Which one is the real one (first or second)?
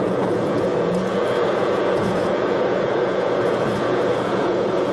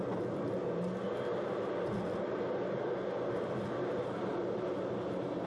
second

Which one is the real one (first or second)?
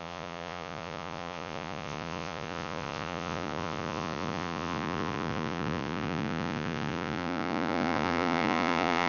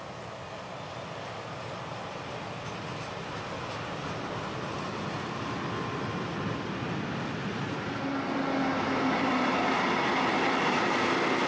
second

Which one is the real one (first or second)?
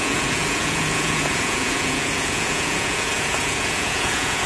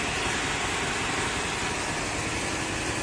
second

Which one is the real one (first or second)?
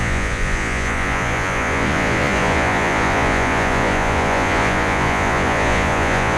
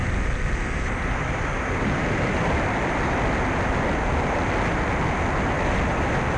second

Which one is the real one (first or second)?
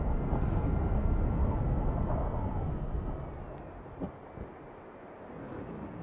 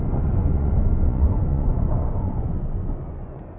first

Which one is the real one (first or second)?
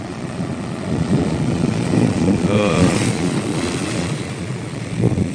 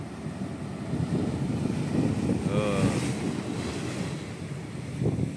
second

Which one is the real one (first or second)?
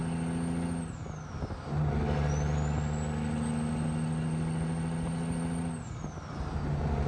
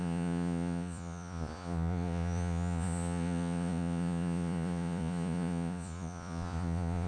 first